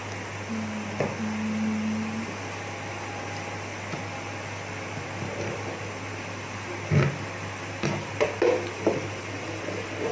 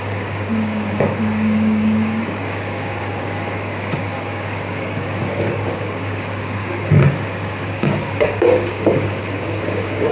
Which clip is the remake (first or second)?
second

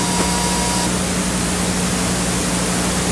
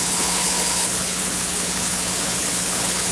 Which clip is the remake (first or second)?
second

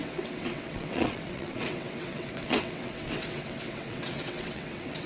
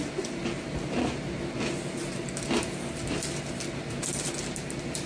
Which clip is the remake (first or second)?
first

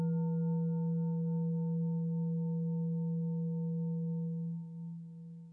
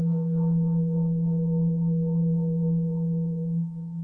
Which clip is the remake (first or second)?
second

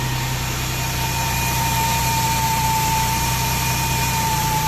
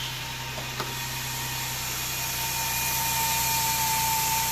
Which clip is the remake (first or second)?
first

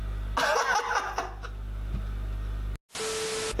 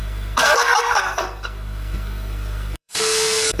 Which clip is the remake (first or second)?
second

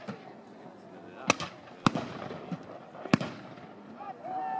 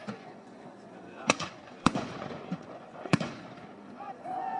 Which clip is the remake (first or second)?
second